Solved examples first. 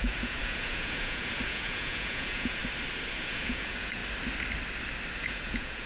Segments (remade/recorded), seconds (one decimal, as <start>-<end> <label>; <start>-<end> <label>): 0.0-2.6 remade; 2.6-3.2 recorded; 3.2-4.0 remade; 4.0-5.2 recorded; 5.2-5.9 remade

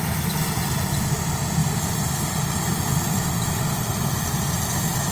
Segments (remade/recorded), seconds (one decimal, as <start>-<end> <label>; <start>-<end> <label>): 0.0-5.1 recorded

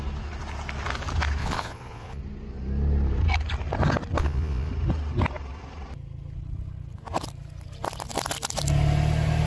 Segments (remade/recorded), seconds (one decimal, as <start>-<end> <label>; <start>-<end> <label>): 0.0-1.4 recorded; 1.4-2.2 remade; 2.2-4.2 recorded; 4.2-4.7 remade; 4.7-9.5 recorded

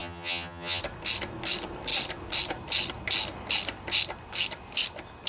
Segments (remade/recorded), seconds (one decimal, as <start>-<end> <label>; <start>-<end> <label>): 0.0-0.8 remade; 0.8-5.3 recorded

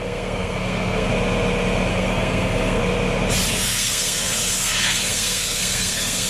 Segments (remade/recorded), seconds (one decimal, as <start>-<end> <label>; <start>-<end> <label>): 0.0-1.1 remade; 1.1-1.9 recorded; 1.9-2.8 remade; 2.8-3.5 recorded; 3.5-6.3 remade

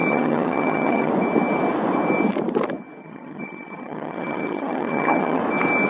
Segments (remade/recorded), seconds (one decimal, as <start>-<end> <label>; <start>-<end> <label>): 0.0-1.1 remade; 1.1-3.0 recorded; 3.0-5.4 remade; 5.4-5.9 recorded

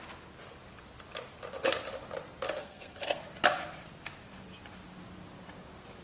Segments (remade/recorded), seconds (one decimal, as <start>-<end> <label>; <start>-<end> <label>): 0.0-2.6 recorded; 2.6-3.2 remade; 3.2-6.0 recorded